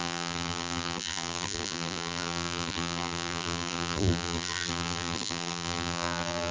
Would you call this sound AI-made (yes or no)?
yes